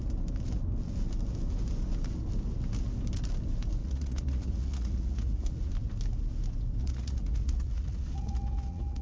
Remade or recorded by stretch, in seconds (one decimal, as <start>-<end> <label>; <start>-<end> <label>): 0.0-3.8 recorded; 3.8-5.7 remade; 5.7-6.8 recorded; 6.8-9.0 remade